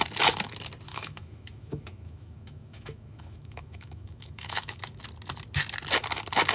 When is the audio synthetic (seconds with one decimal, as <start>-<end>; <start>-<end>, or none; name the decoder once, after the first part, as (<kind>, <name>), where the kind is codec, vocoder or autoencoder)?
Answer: 0.9-4.8 (autoencoder, DAC-VAE)